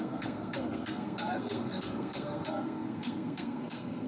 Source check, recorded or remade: remade